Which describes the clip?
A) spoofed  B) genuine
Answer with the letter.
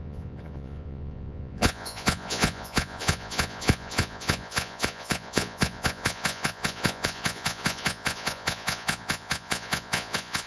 A